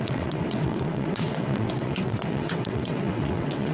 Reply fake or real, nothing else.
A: fake